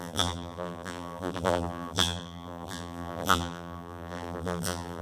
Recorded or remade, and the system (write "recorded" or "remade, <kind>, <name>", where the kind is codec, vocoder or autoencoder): remade, vocoder, BigVGAN v2